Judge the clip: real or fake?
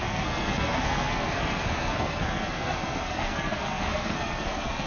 fake